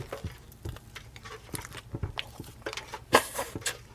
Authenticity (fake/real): fake